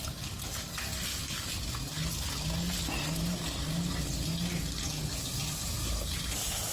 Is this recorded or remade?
recorded